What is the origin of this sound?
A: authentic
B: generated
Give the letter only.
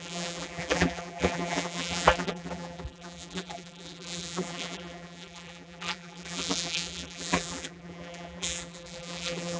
B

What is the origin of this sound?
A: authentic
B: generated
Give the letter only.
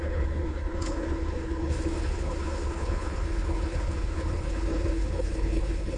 B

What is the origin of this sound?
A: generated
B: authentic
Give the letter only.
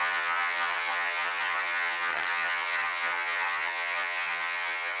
A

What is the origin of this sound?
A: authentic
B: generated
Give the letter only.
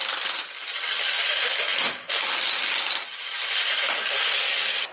A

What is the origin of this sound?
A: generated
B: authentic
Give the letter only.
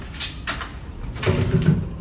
A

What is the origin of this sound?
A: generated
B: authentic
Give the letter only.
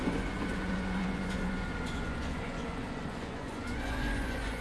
A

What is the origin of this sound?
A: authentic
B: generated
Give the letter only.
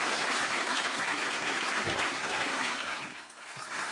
B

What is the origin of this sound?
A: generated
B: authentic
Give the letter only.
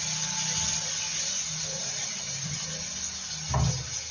B